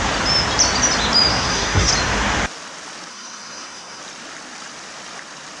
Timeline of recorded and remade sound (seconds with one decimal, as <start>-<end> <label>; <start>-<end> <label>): 0.0-1.3 recorded; 1.3-1.9 remade; 1.9-3.1 recorded; 3.1-4.0 remade; 4.0-5.6 recorded